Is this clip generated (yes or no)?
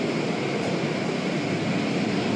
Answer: no